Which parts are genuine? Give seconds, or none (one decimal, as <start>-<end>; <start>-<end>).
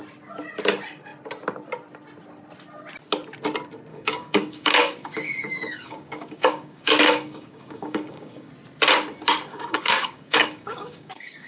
0.0-3.9; 8.5-9.5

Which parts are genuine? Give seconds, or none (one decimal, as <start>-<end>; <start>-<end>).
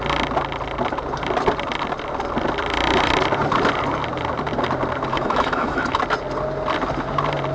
0.0-5.1; 6.0-7.5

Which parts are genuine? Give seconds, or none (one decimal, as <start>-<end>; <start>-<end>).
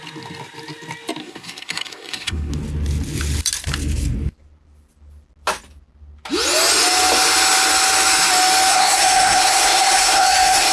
0.0-1.2; 2.5-8.7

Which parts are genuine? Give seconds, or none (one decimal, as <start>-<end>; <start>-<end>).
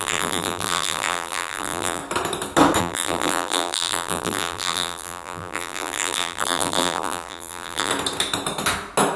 2.0-2.8; 7.9-9.2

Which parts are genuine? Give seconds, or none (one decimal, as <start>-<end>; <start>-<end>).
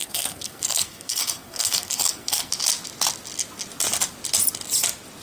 2.5-5.2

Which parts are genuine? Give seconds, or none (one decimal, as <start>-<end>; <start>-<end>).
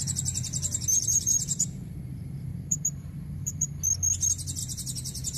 0.0-0.9; 3.8-4.6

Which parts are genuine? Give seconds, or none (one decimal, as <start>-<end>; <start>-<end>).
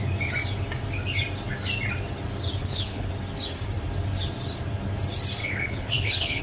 0.0-2.6; 3.1-5.4